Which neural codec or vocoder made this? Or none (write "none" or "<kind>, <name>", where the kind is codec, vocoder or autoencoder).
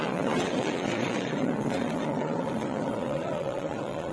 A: vocoder, Vocos